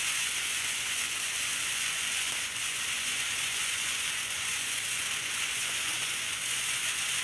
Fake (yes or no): yes